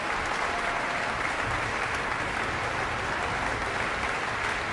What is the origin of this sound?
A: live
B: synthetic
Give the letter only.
A